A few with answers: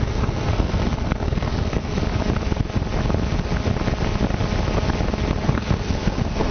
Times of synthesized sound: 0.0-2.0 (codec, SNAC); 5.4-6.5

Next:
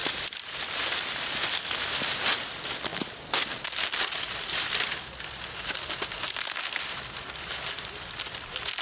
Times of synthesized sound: none

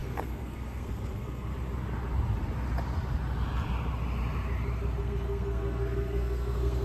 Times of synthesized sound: 0.0-1.5 (codec, SNAC); 5.0-6.8

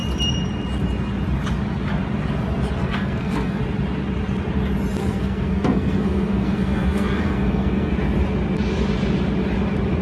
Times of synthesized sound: 2.8-3.6 (codec, SNAC); 5.0-7.9

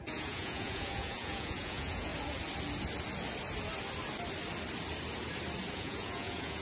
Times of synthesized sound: 0.0-2.1 (vocoder, Vocos); 5.7-6.6

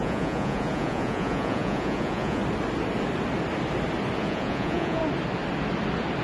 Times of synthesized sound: 0.0-2.4 (vocoder, Vocos); 4.2-5.0

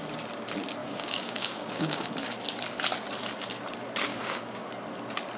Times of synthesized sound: 0.8-2.1 (codec, DAC); 4.1-4.7

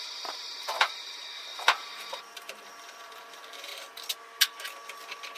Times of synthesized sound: 0.0-3.7 (vocoder, BigVGAN v2)